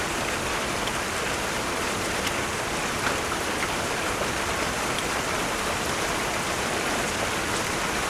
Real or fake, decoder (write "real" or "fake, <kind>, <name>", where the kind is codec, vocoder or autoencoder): fake, vocoder, BigVGAN v2